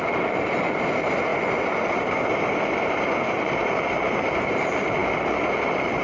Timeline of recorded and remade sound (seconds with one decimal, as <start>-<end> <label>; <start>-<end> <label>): 0.0-1.3 remade; 1.3-3.4 recorded; 3.4-6.0 remade